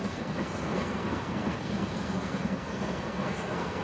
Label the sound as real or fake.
fake